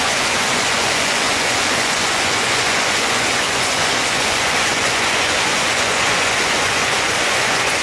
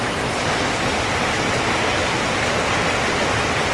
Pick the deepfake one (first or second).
first